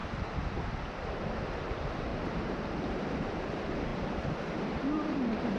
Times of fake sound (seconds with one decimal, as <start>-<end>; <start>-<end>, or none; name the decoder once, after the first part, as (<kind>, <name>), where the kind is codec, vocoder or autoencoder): 1.2-5.6 (vocoder, BigVGAN v2)